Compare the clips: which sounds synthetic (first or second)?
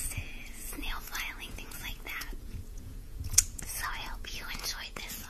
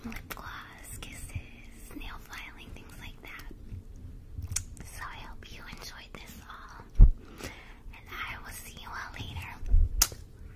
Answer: first